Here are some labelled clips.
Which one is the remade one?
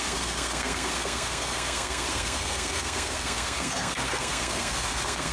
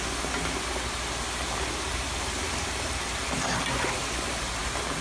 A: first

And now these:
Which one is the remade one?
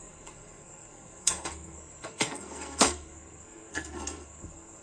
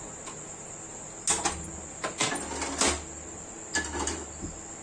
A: first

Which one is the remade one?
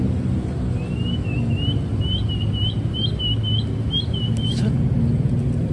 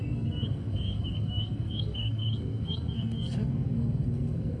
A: second